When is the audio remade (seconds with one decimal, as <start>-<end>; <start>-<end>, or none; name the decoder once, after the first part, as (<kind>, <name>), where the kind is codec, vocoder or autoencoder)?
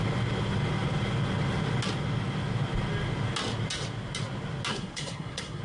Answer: 4.7-5.6 (codec, SNAC)